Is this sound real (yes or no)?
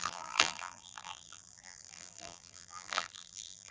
no